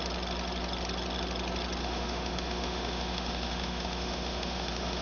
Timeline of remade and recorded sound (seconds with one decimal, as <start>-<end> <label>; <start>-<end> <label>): 0.0-1.8 recorded; 1.8-5.0 remade